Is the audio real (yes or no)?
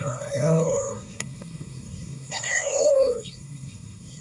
no